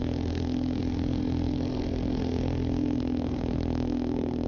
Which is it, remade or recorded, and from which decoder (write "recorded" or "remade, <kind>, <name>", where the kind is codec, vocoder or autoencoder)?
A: remade, codec, SNAC